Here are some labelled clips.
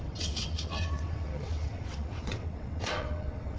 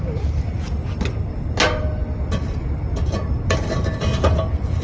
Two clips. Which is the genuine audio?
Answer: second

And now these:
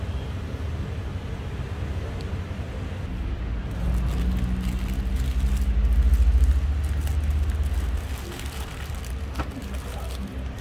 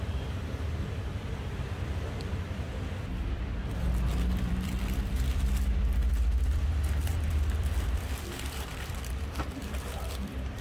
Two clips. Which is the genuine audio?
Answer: first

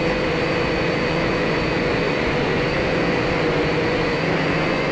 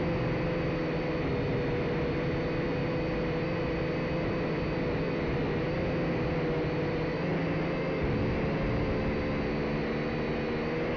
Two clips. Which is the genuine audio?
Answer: second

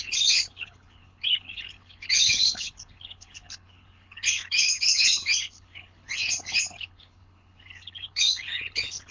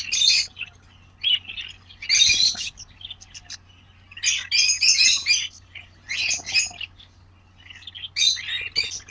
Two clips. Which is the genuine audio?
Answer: second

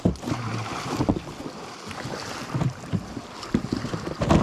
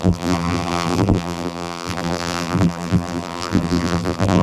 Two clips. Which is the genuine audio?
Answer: first